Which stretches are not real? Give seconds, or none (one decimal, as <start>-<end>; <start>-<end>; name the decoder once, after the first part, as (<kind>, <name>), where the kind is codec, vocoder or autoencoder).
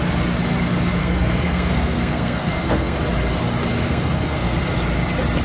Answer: 1.0-3.0 (codec, SNAC); 3.7-4.6